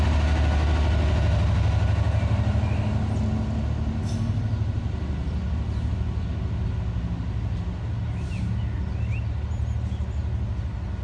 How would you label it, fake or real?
real